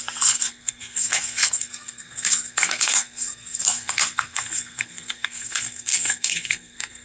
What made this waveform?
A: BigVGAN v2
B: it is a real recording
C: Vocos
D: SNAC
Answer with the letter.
D